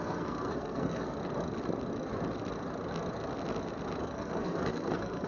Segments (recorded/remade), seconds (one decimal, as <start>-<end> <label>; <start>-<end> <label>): 0.0-1.2 remade; 1.2-4.0 recorded; 4.0-5.3 remade